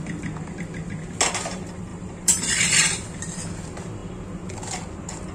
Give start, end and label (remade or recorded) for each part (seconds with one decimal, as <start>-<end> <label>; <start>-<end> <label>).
0.0-1.9 recorded; 1.9-3.2 remade; 3.2-5.3 recorded